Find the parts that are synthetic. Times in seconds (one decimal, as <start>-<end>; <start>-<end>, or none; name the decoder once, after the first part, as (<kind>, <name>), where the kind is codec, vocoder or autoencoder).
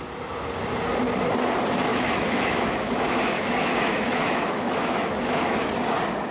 1.9-5.7 (autoencoder, DAC-VAE)